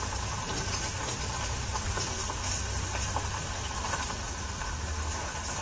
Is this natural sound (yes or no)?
no